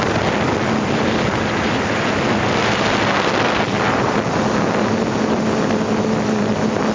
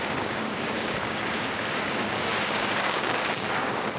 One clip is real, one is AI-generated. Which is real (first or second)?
first